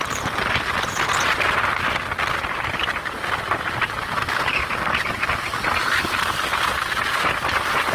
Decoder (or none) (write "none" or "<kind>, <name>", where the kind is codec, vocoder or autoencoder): none